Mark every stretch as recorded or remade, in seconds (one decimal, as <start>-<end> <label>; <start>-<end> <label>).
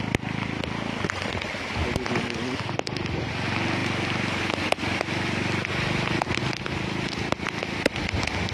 0.0-8.5 recorded